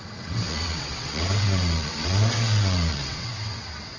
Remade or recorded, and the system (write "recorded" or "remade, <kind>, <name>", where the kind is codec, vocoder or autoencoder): remade, vocoder, WaveNeXt